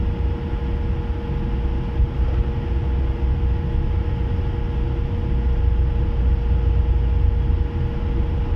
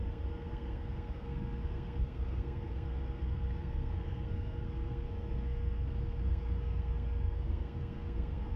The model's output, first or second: second